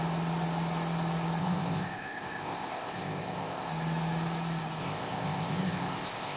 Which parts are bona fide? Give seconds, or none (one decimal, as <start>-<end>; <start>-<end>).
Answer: 0.0-1.4; 3.7-4.8